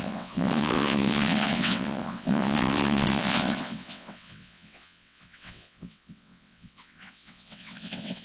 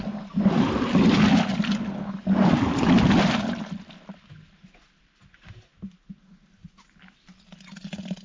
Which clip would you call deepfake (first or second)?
first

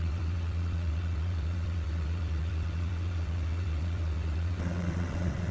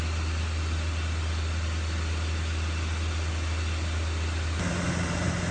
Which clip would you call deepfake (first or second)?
first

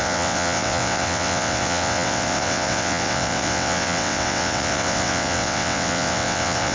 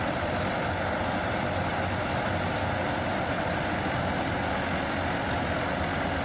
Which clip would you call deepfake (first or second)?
first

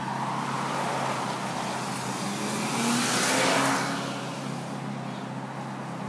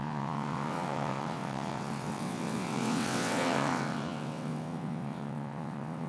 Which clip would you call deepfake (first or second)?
second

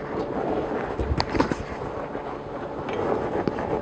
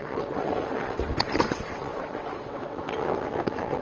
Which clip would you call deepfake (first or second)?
second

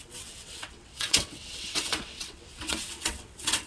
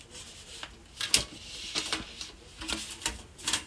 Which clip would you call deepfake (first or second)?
first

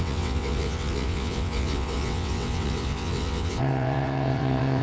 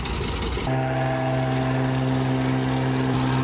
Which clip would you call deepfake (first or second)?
first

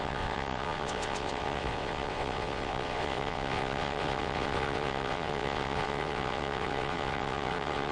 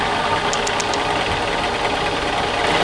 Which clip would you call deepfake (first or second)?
first